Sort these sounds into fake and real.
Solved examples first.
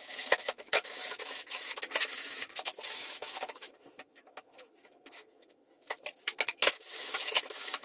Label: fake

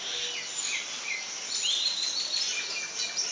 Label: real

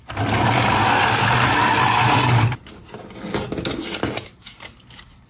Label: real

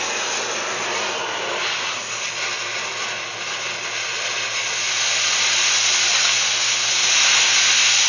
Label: real